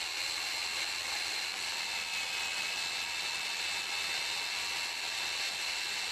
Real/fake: real